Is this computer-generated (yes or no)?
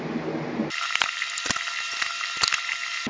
no